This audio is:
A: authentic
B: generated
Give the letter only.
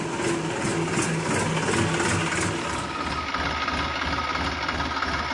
A